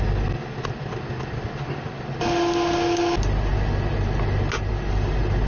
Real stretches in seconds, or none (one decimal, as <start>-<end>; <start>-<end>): 0.0-5.5